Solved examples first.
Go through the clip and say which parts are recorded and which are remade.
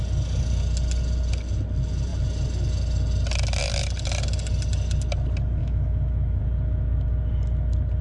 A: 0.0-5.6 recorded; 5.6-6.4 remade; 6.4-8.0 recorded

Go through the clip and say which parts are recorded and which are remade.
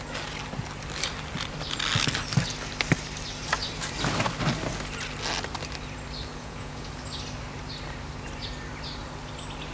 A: 0.0-6.3 recorded; 6.3-6.9 remade; 6.9-9.7 recorded